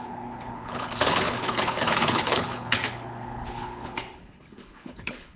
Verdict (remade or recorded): remade